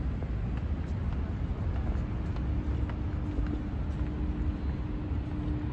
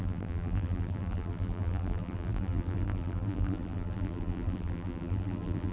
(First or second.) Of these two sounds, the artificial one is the second